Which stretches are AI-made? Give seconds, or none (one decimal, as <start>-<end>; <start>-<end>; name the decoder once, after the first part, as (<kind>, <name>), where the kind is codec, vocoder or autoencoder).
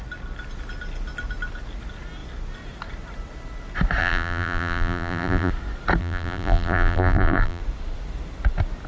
4.0-5.5 (vocoder, BigVGAN v2); 6.0-7.6